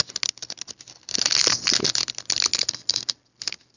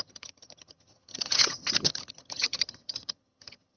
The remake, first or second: second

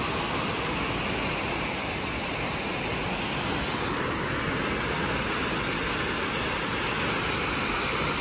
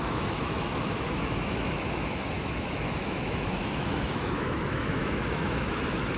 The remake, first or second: second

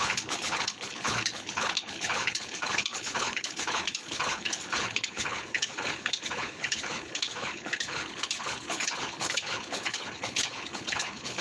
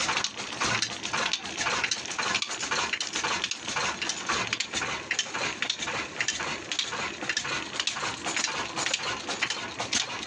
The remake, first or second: first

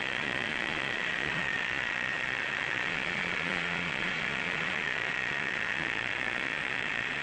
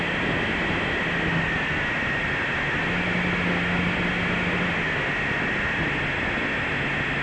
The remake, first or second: first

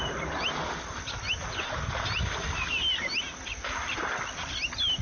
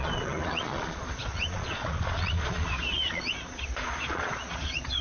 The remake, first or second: second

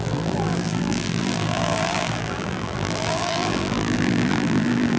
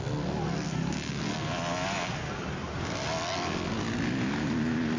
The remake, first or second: first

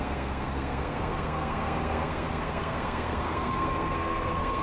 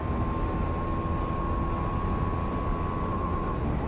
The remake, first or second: first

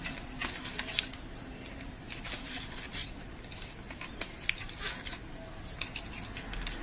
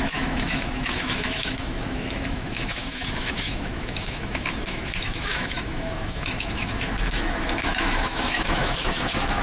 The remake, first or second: second